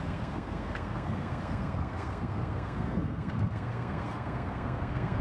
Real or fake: fake